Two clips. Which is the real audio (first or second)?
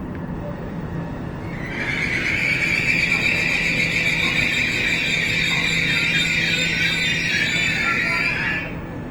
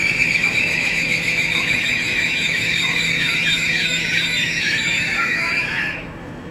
first